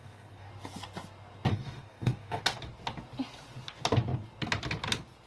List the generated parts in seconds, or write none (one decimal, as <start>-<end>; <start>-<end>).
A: 0.0-0.5; 1.5-2.4